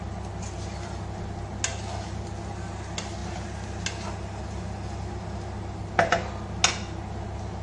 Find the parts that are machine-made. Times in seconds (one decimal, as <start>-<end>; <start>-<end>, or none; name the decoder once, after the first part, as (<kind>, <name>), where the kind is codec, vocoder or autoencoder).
none